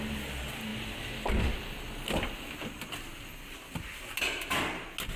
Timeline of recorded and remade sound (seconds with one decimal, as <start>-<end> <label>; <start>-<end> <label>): 0.0-5.2 recorded